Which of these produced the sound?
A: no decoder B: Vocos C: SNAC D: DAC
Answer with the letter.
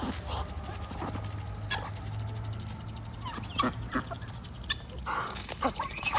A